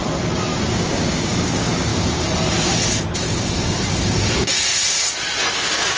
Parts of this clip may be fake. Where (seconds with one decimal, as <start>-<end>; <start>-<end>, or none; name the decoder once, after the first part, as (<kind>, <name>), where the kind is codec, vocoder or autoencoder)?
0.7-1.9 (codec, DAC); 5.5-6.0